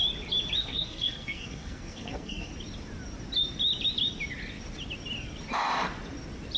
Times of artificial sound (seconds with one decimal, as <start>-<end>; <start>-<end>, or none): 0.6-2.5